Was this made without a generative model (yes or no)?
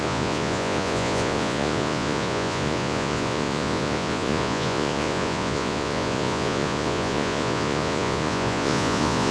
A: no